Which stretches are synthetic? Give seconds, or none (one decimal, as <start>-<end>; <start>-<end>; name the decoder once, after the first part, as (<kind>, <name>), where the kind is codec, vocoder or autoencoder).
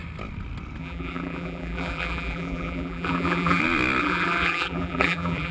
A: 0.8-3.6 (vocoder, BigVGAN v2); 4.0-5.5